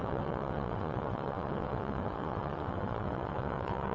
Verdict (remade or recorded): remade